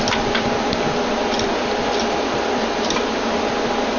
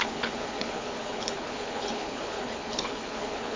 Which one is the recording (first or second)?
first